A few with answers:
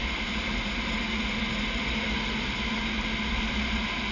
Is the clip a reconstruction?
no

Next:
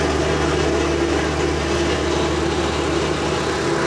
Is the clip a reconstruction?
no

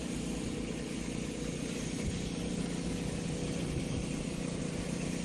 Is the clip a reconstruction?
no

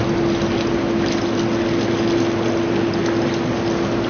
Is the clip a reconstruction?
no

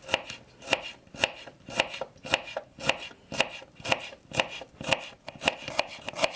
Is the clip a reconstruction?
no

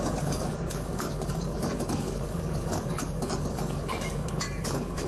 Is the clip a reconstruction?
yes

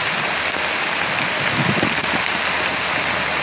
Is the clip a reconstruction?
no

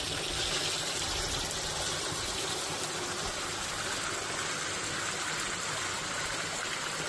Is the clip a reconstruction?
no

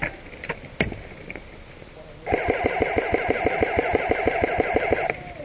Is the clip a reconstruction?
no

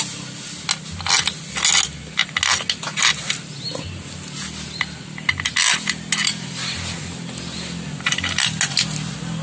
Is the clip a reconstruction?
no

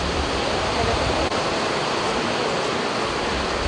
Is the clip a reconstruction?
no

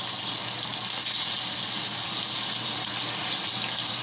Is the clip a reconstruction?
no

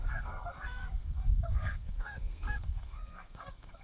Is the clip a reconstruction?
yes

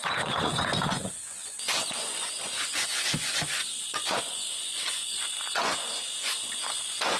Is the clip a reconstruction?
yes